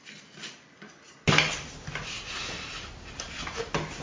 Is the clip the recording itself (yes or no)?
yes